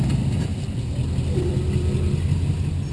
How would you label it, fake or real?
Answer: real